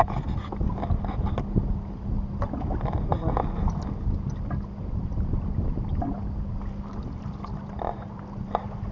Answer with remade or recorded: recorded